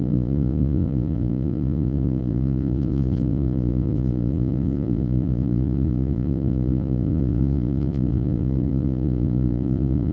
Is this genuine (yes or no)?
no